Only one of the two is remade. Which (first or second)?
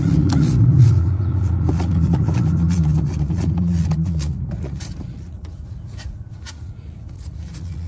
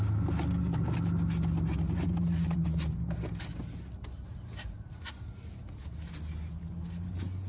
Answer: first